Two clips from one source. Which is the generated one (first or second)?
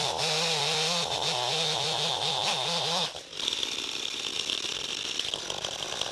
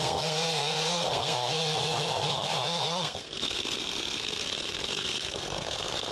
second